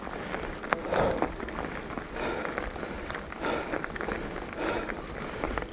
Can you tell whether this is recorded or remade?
recorded